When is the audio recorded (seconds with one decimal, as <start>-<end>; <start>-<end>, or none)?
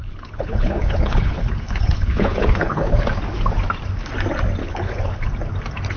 3.0-4.6; 5.3-6.0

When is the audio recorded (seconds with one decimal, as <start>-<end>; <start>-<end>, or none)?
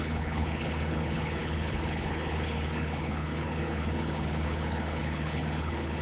none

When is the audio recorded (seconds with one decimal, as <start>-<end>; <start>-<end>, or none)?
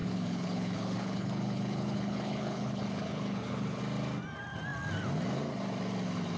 3.8-6.4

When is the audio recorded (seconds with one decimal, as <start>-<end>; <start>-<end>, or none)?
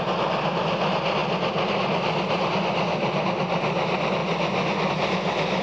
0.0-5.6